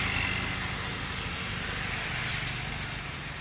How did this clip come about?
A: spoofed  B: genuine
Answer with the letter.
B